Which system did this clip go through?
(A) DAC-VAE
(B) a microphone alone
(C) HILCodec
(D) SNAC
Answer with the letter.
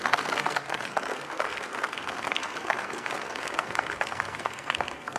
D